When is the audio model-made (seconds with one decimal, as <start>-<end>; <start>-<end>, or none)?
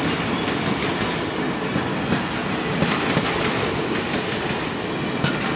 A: none